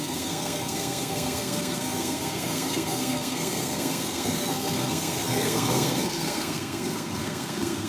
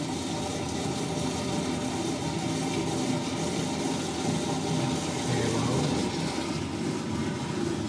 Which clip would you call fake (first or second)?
first